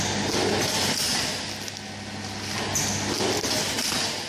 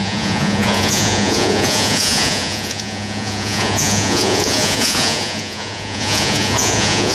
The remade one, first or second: second